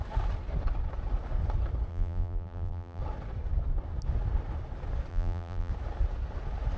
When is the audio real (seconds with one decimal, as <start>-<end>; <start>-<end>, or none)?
0.0-1.9; 3.0-5.1; 5.7-6.8